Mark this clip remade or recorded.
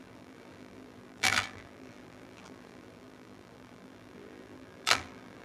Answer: remade